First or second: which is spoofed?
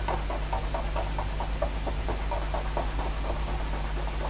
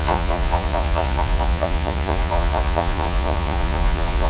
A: second